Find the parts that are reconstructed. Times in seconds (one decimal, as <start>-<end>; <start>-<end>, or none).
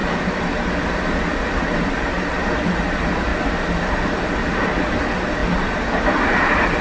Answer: 0.0-5.4; 6.1-6.8